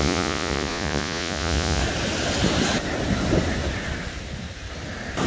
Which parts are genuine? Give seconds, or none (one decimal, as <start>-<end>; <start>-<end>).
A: 1.8-5.3